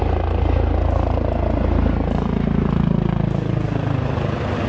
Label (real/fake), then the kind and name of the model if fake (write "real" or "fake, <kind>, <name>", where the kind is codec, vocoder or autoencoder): real